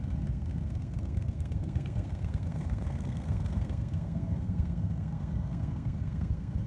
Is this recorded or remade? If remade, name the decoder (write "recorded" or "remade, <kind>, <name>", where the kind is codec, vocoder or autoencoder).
remade, codec, SNAC